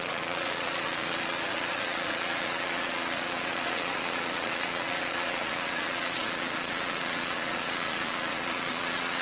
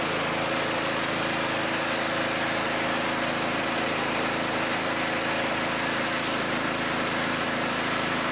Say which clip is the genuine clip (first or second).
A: second